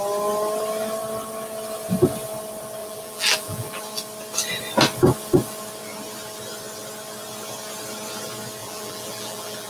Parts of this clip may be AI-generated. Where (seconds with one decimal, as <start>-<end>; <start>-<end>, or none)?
2.8-3.8; 8.6-9.7